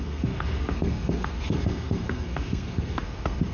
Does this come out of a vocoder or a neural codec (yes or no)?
yes